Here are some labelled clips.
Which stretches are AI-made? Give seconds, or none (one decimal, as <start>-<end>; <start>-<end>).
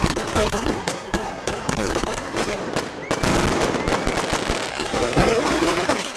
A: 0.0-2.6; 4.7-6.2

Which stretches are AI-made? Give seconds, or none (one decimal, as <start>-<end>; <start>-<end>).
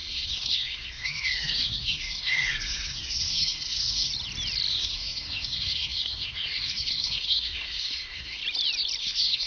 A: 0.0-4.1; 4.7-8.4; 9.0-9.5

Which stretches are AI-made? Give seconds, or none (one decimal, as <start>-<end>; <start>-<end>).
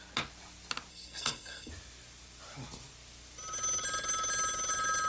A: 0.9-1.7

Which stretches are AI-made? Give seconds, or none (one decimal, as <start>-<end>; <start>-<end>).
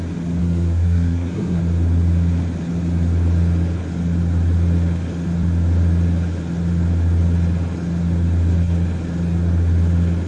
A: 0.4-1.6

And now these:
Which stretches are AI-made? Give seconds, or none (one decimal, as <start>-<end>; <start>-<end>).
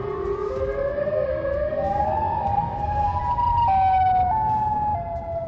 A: 1.0-3.2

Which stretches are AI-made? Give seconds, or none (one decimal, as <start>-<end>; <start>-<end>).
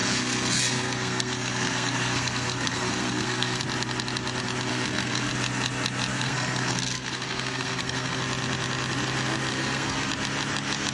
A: 0.0-3.6; 4.7-5.3; 6.1-8.2; 9.5-10.1